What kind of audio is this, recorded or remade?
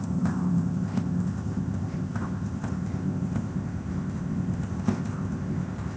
remade